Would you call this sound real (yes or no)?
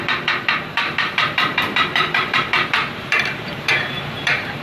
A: no